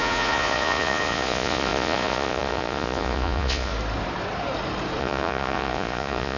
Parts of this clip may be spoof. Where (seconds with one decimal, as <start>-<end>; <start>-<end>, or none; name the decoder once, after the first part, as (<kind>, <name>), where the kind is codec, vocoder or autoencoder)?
0.0-3.7 (vocoder, Vocos); 5.0-6.4